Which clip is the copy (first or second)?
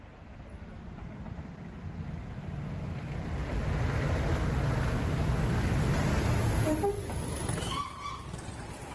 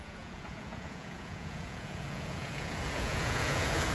second